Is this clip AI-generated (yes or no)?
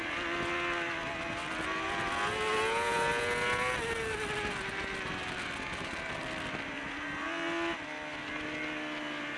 no